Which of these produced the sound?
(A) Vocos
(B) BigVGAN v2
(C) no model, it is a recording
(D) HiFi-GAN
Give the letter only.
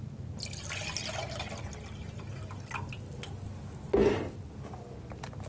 C